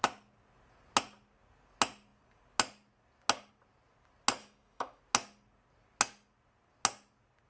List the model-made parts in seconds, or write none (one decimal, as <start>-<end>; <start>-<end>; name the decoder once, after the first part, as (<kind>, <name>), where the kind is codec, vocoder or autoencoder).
4.4-5.0 (autoencoder, DAC-VAE)